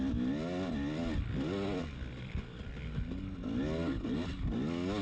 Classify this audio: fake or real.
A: real